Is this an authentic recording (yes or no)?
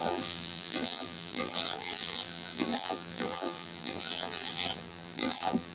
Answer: no